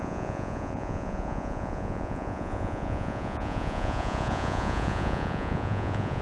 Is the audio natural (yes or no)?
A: no